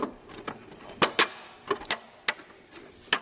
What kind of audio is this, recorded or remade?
recorded